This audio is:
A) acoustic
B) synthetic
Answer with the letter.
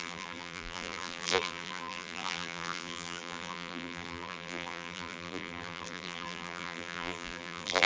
B